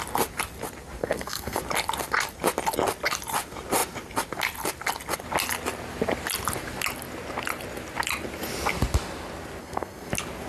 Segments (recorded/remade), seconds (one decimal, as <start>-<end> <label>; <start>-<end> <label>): 0.0-1.0 recorded; 1.0-1.6 remade; 1.6-9.6 recorded; 9.6-10.1 remade; 10.1-10.5 recorded